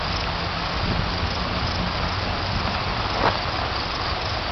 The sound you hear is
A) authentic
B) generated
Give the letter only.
A